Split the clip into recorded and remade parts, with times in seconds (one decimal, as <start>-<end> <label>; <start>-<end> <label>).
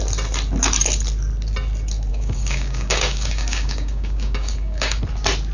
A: 0.0-2.1 recorded; 2.1-5.0 remade; 5.0-5.5 recorded